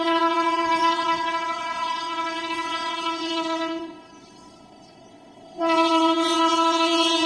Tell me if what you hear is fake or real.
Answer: fake